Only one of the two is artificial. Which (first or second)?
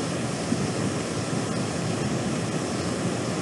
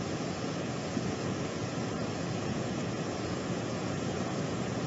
second